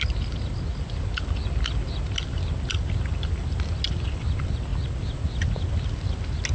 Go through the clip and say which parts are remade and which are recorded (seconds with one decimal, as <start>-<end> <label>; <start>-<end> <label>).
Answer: 0.0-6.5 recorded